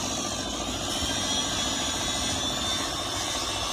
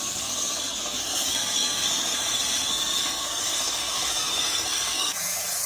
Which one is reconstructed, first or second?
second